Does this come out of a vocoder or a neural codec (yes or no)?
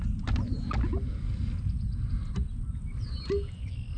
no